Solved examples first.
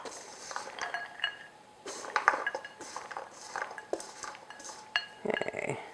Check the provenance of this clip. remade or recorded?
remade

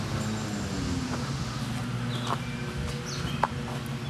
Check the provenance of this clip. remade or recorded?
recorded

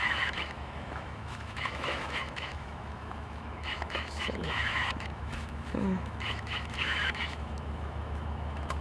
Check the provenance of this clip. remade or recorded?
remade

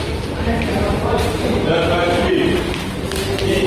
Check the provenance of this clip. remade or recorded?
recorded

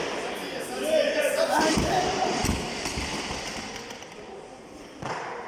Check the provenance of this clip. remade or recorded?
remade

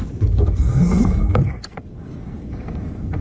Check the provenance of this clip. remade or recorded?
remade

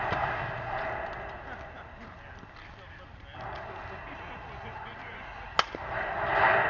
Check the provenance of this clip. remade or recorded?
recorded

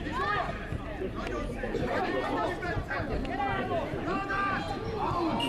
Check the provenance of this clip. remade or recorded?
remade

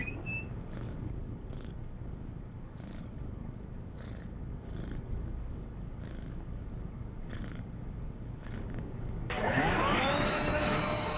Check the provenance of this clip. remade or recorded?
remade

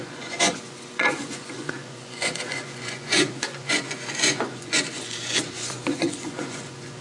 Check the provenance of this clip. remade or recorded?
remade